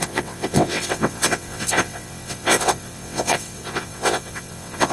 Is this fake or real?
fake